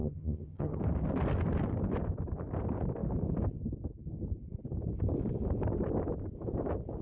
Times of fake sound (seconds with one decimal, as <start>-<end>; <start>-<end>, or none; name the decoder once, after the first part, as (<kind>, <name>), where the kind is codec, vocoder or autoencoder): 0.0-0.8 (vocoder, HiFi-GAN)